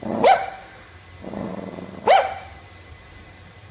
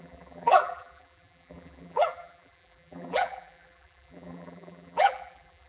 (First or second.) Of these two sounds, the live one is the first